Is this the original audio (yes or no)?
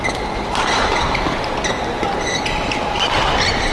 yes